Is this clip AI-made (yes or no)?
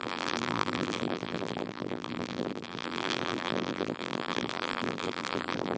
yes